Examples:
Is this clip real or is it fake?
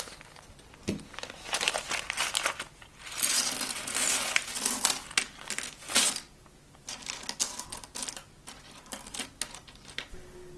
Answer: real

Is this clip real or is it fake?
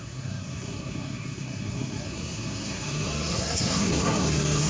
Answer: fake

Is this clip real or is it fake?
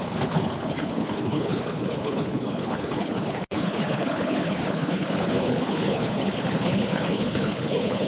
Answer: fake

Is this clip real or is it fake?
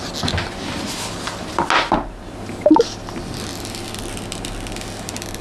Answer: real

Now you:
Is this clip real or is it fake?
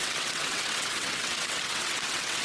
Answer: fake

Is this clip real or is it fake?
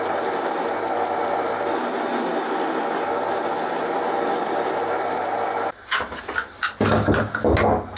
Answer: real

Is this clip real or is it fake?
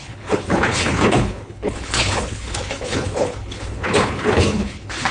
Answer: fake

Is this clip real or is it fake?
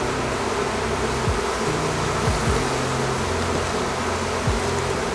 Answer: real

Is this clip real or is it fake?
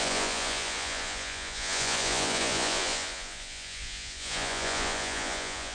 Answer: fake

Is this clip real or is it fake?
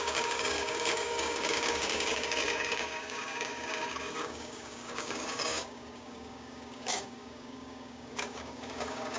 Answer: fake